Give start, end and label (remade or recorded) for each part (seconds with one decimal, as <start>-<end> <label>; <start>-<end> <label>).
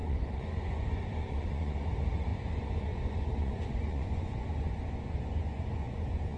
0.0-1.9 remade; 1.9-2.3 recorded; 2.3-6.4 remade